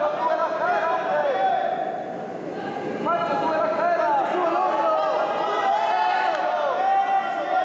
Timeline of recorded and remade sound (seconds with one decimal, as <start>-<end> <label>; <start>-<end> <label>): 0.0-0.4 recorded; 0.4-1.5 remade; 1.5-7.6 recorded